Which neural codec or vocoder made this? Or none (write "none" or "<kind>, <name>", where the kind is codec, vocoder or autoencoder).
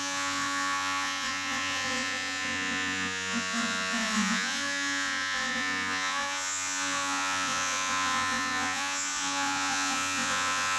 vocoder, Vocos